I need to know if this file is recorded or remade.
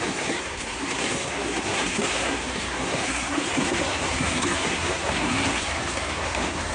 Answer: remade